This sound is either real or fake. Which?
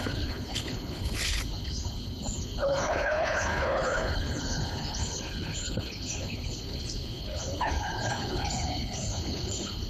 fake